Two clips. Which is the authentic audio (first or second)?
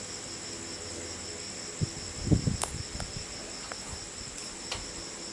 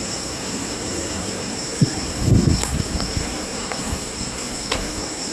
first